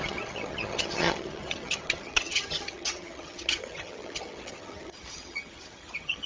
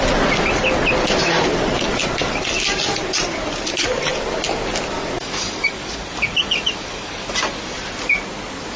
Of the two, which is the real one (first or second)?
second